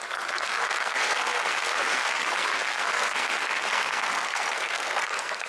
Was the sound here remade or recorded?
remade